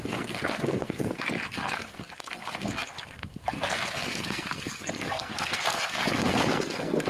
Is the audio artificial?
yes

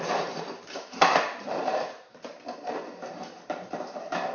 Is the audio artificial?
yes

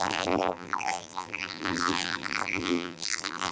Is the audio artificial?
yes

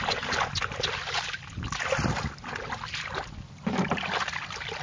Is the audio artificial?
no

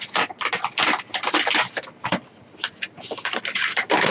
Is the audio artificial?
no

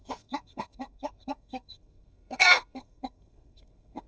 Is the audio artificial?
yes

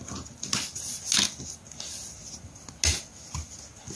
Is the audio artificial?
no